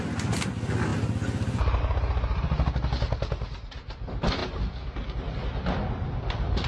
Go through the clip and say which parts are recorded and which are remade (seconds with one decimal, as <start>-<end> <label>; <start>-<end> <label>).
0.0-6.7 recorded